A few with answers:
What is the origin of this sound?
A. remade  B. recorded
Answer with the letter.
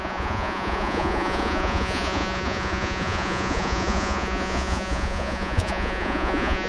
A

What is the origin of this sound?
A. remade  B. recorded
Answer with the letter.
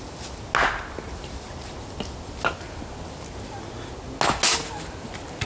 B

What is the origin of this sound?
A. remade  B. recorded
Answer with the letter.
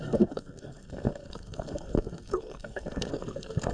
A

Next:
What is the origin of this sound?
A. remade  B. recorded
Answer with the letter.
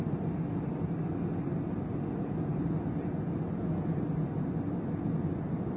B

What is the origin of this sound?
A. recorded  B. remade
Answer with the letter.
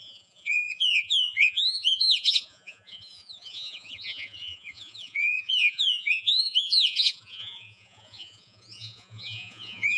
B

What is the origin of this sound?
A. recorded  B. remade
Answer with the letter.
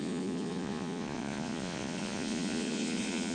B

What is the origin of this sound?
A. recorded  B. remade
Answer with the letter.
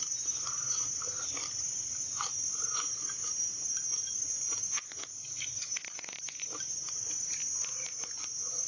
B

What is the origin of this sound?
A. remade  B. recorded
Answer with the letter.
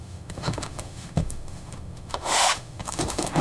A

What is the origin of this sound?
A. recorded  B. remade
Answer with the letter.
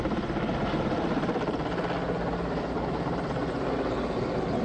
A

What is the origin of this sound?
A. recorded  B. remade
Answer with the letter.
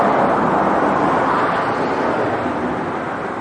A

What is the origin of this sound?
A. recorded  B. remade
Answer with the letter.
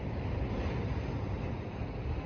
A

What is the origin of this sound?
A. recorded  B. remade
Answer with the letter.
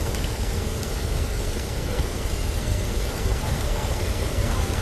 B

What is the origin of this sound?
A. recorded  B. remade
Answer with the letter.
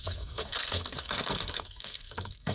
B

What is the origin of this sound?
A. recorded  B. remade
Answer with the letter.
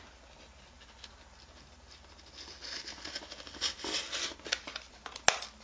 A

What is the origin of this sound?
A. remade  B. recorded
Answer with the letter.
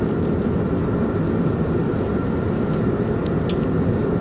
B